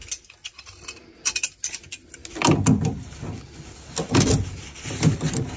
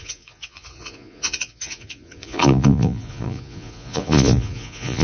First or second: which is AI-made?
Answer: second